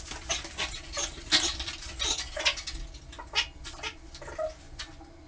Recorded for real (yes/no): yes